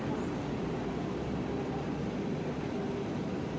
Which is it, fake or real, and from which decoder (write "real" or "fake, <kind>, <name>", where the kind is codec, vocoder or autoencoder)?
real